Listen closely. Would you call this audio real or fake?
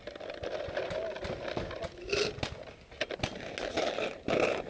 real